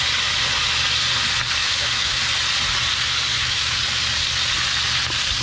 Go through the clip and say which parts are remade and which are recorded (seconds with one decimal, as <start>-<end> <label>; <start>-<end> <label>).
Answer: 0.0-1.6 recorded; 1.6-2.2 remade; 2.2-3.3 recorded; 3.3-3.8 remade; 3.8-5.4 recorded